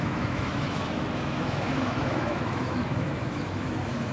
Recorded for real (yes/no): no